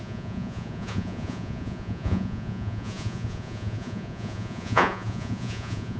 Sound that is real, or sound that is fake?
fake